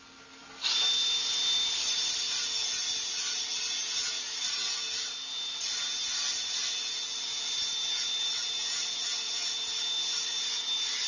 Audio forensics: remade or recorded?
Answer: recorded